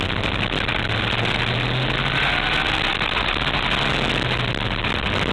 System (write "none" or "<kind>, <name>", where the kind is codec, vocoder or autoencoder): none